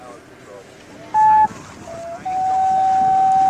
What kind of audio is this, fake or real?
real